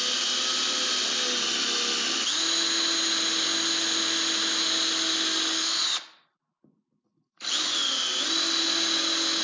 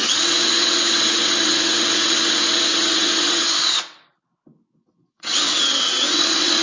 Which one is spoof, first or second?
second